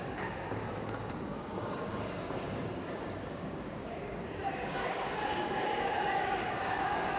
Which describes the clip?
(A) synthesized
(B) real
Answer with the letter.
A